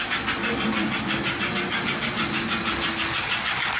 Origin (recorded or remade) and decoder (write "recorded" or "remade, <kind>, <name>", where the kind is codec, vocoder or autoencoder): recorded